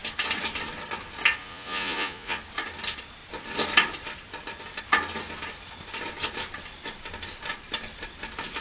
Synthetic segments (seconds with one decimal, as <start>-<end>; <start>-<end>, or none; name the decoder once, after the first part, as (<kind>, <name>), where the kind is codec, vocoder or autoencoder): 1.4-2.4 (vocoder, Vocos)